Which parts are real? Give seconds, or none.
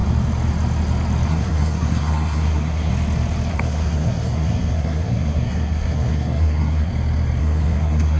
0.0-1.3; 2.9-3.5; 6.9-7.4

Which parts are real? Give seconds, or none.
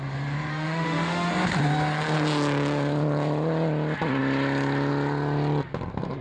0.0-0.5; 1.3-6.2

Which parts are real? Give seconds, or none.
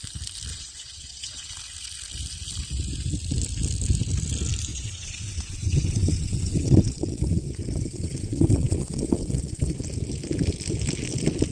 0.0-0.5; 1.5-4.7; 9.8-11.5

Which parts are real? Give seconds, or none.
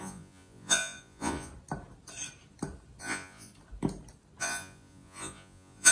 1.5-3.0; 3.5-4.4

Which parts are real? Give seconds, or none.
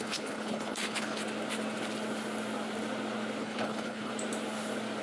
1.2-3.4; 4.1-5.0